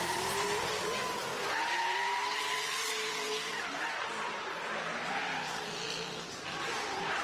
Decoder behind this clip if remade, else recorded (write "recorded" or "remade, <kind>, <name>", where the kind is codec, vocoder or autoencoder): remade, vocoder, BigVGAN v2